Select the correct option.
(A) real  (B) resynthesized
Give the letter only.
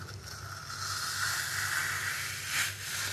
A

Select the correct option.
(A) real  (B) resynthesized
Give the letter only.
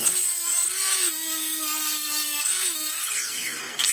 B